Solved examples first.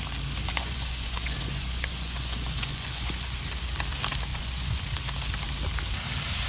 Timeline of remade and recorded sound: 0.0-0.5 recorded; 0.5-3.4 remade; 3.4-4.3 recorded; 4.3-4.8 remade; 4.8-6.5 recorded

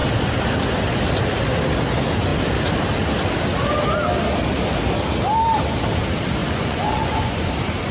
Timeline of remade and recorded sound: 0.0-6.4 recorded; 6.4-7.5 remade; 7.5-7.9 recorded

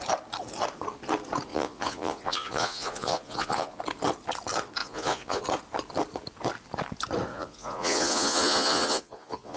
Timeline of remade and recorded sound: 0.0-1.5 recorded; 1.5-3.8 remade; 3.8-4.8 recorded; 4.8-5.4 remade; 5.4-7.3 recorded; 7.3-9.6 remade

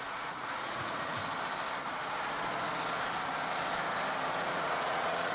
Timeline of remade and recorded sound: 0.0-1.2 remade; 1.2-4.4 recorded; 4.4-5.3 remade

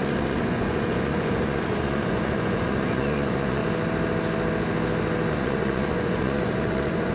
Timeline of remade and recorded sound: 0.0-3.6 remade; 3.6-5.3 recorded; 5.3-7.1 remade

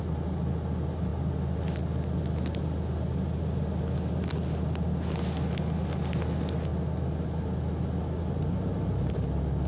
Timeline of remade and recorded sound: 0.0-9.7 recorded